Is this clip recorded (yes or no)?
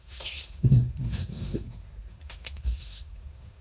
no